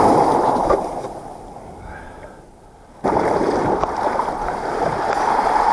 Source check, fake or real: fake